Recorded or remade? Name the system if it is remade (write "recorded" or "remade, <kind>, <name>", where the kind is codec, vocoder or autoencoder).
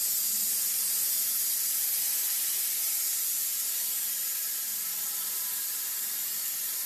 recorded